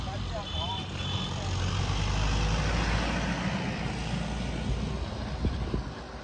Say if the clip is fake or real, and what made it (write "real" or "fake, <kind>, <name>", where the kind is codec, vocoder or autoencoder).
real